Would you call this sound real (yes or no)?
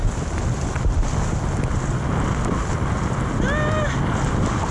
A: yes